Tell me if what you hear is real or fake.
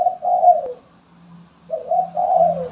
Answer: real